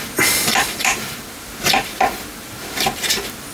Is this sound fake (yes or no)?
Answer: yes